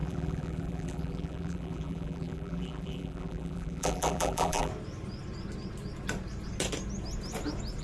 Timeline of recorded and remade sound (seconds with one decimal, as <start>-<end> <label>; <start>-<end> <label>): 0.0-4.7 remade; 4.7-7.8 recorded